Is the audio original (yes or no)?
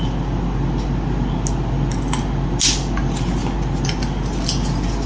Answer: yes